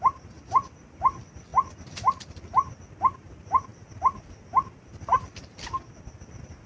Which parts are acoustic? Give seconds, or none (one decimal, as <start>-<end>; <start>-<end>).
0.0-6.7